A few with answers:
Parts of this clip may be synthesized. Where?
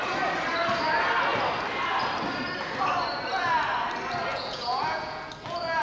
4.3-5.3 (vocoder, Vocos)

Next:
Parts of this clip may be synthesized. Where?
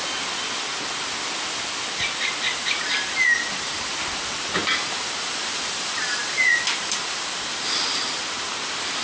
none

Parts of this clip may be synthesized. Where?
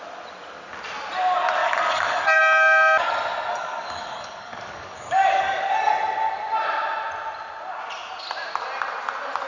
1.6-2.4 (codec, DAC); 3.5-5.9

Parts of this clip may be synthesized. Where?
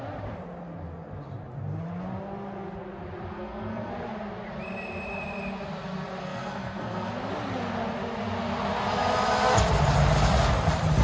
3.3-3.9 (codec, SNAC); 6.2-7.1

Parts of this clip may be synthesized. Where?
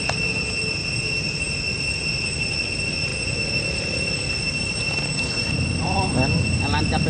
none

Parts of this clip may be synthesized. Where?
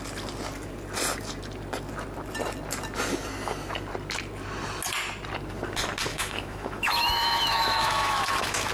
6.1-8.7 (autoencoder, DAC-VAE)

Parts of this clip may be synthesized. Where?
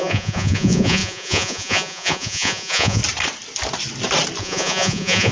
0.0-3.0 (vocoder, Vocos); 4.4-5.3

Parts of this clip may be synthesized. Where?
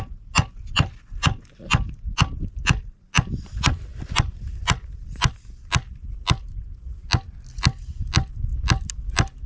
none